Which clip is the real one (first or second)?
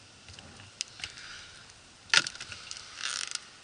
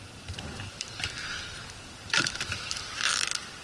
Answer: first